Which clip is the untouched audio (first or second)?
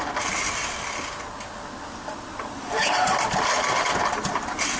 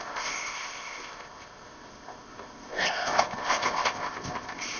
first